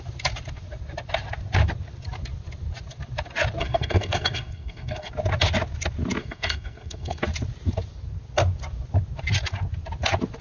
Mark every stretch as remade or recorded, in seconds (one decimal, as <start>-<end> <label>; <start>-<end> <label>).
0.0-3.6 recorded; 3.6-5.1 remade; 5.1-6.2 recorded; 6.2-7.2 remade; 7.2-10.4 recorded